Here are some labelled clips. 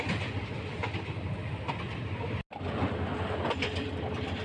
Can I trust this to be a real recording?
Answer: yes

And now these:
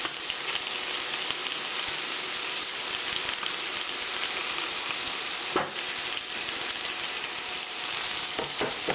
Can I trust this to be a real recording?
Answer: yes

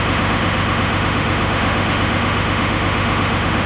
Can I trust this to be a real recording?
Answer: no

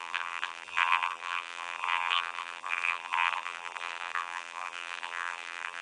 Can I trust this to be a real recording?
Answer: no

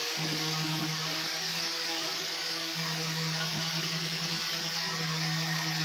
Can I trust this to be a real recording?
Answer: no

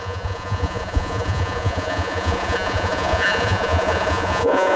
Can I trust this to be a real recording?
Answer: no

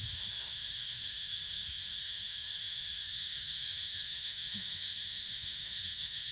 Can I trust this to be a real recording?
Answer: no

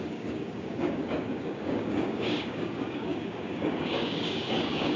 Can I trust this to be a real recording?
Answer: no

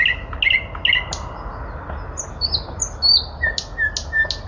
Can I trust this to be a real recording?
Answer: yes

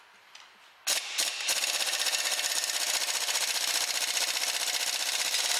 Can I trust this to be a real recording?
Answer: yes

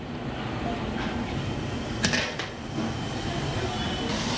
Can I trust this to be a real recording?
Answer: yes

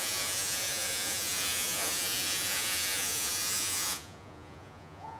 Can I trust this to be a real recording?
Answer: no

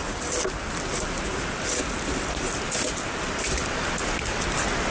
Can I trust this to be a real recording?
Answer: yes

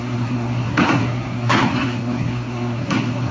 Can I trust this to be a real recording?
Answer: no